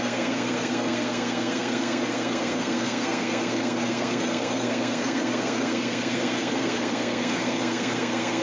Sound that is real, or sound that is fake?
fake